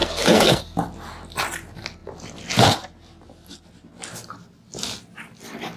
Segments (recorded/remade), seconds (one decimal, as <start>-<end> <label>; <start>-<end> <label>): 0.0-0.6 remade; 0.6-5.8 recorded

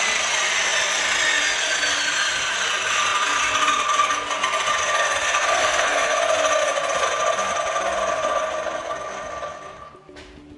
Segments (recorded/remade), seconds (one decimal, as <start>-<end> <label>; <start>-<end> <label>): 0.0-5.2 recorded; 5.2-6.2 remade; 6.2-10.6 recorded